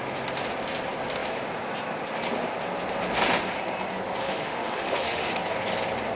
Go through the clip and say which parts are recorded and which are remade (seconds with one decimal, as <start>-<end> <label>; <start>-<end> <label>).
0.0-4.2 recorded; 4.2-5.3 remade; 5.3-6.2 recorded